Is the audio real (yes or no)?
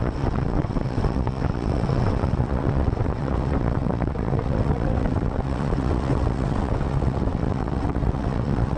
no